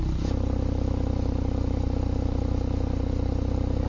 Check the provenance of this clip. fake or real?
real